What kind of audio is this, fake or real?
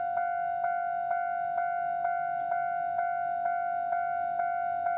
real